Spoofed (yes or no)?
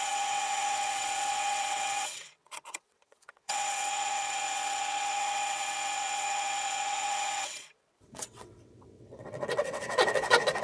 yes